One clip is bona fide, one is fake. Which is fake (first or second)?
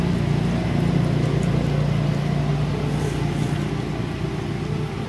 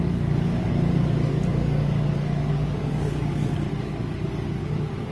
second